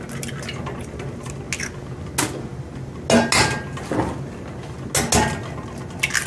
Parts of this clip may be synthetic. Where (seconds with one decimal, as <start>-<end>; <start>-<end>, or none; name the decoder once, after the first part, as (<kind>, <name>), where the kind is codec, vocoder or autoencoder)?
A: none